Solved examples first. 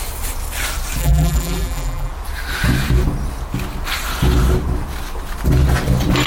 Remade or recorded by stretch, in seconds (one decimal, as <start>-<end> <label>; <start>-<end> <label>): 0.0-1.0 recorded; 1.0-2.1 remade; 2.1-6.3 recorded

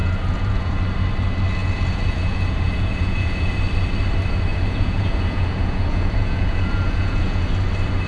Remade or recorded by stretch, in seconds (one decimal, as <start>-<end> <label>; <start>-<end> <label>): 0.0-0.8 remade; 0.8-1.6 recorded; 1.6-3.5 remade; 3.5-4.5 recorded; 4.5-7.5 remade; 7.5-8.1 recorded

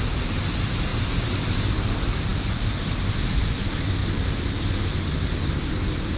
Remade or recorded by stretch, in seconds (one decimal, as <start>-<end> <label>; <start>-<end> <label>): 0.0-6.2 recorded

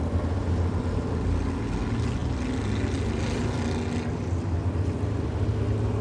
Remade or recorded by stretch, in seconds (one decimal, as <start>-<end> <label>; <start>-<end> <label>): 0.0-6.0 recorded